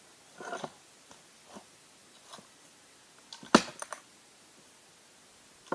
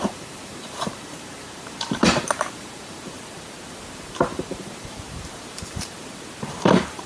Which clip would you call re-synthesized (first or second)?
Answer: second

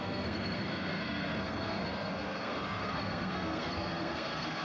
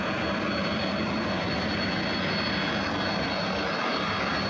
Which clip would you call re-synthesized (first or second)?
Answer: first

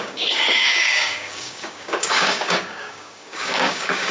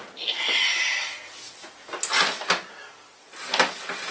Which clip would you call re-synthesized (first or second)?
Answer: first